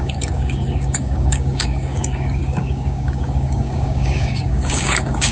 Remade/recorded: remade